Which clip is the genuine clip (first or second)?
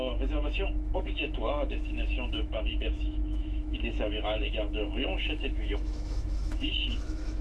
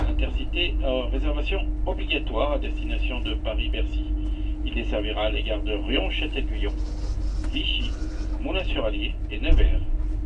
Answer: second